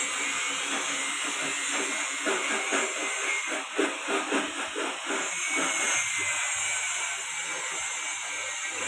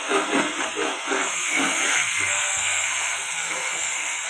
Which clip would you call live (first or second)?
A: first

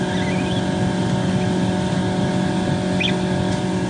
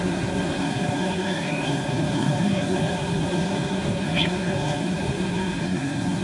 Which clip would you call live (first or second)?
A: first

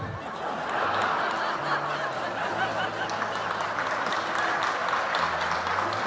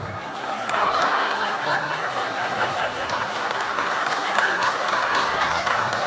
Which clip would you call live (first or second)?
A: first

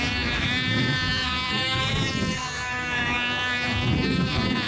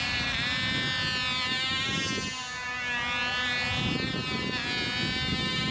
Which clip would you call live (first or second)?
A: second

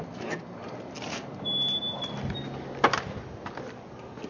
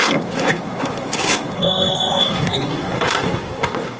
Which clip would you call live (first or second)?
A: first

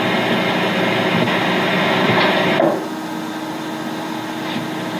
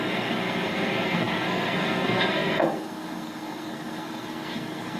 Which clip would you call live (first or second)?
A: first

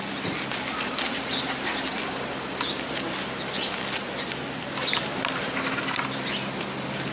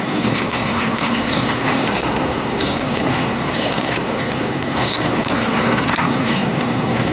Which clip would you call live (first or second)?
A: first